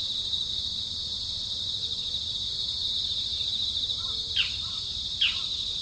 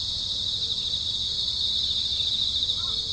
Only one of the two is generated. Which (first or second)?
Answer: first